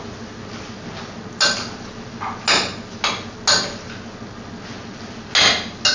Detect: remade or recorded recorded